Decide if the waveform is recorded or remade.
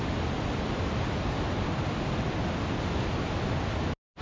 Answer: recorded